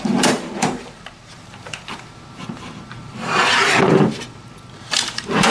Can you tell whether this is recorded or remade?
remade